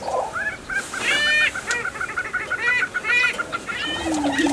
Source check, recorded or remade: recorded